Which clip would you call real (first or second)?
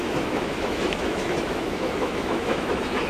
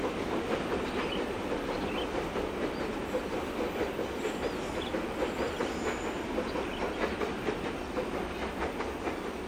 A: second